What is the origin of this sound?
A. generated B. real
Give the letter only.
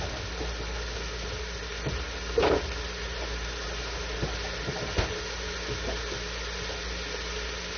B